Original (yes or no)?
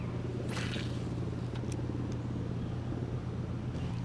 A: yes